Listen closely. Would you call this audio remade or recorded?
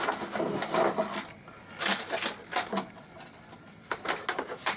recorded